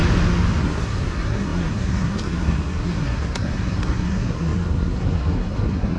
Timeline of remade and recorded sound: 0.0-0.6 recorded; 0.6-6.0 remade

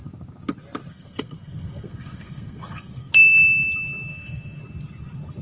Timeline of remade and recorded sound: 0.0-0.9 recorded; 0.9-3.1 remade; 3.1-4.1 recorded; 4.1-4.6 remade; 4.6-5.4 recorded

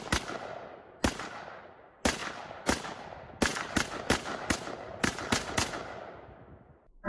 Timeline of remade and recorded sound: 0.0-7.1 recorded

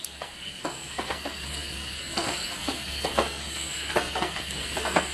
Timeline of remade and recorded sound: 0.0-5.1 remade

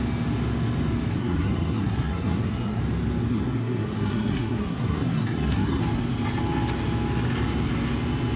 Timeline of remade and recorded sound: 0.0-1.1 recorded; 1.1-2.8 remade; 2.8-3.3 recorded; 3.3-5.8 remade; 5.8-8.4 recorded

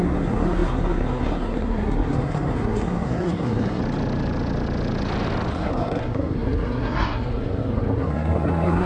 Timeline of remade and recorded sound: 0.0-3.8 remade; 3.8-5.5 recorded; 5.5-8.9 remade